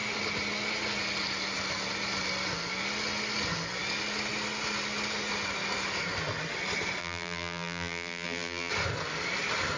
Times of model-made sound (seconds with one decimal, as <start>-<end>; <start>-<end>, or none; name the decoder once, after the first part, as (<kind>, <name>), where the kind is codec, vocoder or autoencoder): 7.0-8.7 (vocoder, BigVGAN v2)